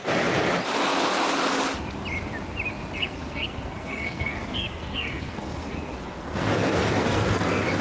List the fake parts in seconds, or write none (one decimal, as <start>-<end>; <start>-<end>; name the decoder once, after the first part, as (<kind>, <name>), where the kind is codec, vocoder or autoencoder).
3.0-7.8 (codec, SNAC)